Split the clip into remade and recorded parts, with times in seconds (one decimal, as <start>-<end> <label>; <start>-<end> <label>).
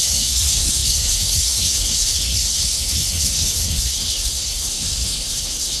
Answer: 0.0-5.8 remade